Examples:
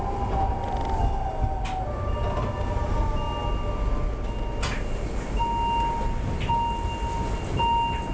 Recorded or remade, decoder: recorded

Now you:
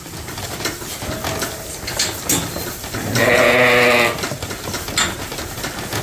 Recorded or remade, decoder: recorded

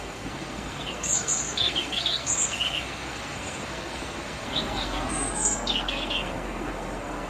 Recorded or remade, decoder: remade, codec, SNAC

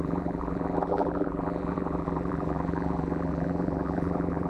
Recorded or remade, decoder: remade, vocoder, BigVGAN v2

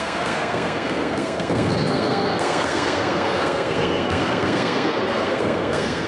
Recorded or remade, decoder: remade, codec, SNAC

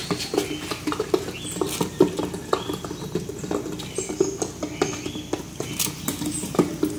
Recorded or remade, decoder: recorded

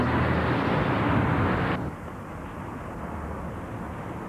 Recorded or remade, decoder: recorded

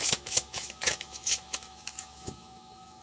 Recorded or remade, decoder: remade, autoencoder, DAC-VAE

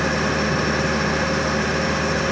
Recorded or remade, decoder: recorded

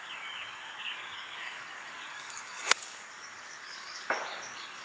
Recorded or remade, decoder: remade, codec, DAC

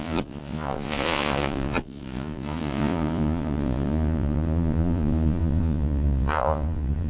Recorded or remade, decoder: remade, vocoder, Vocos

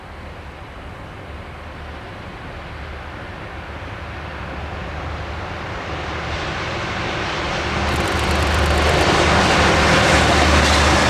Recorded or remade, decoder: recorded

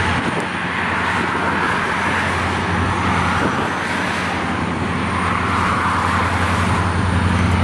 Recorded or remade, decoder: recorded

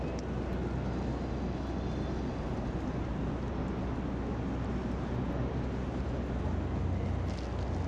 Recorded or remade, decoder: recorded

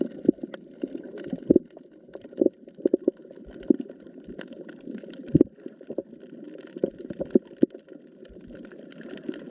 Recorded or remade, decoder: recorded